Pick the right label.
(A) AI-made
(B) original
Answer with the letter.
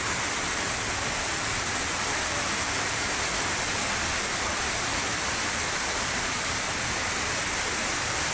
A